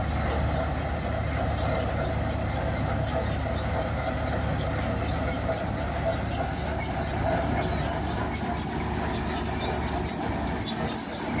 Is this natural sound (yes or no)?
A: yes